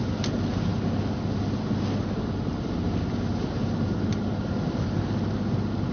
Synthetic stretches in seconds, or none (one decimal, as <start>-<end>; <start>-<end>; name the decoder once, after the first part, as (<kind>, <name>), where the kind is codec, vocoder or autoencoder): none